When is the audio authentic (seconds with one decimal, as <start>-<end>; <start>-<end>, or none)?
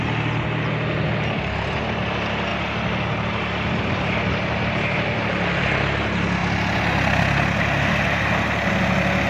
0.0-9.3